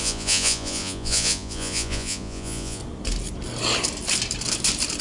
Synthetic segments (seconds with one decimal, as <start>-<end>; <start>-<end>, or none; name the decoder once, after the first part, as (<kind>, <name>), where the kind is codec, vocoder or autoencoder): 0.0-2.8 (vocoder, Vocos)